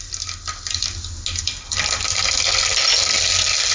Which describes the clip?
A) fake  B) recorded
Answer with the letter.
B